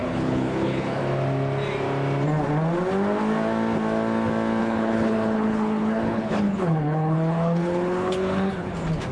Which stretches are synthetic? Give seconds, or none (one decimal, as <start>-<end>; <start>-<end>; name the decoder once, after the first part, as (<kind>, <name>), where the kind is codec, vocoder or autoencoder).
0.0-1.0 (codec, HILCodec); 4.6-8.7